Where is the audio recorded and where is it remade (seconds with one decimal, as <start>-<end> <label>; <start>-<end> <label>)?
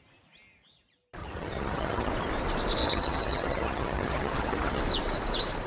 0.0-1.2 recorded; 1.2-2.1 remade; 2.1-2.8 recorded; 2.8-4.8 remade; 4.8-5.7 recorded